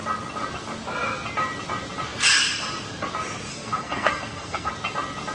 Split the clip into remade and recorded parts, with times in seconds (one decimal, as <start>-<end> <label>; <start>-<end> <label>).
0.0-3.5 recorded; 3.5-4.7 remade; 4.7-5.3 recorded